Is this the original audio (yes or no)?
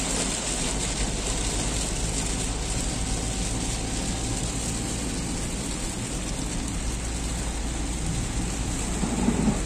yes